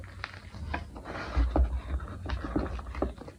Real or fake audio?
real